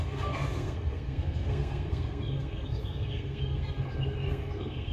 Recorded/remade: remade